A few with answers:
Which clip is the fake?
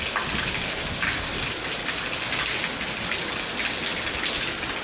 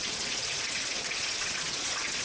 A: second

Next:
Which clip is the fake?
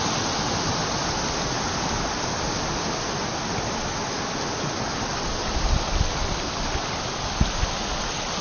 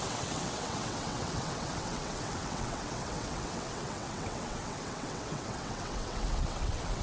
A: second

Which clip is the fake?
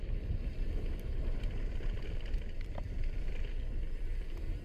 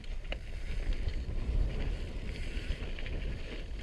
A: second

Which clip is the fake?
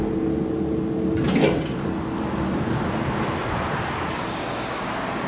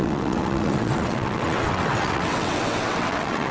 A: second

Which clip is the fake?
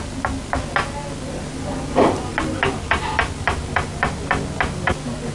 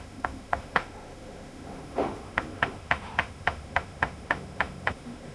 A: second